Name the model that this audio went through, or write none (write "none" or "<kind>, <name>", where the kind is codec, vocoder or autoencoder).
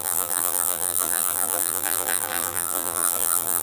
vocoder, BigVGAN v2